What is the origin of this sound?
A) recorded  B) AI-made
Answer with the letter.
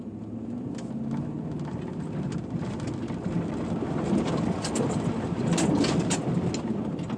A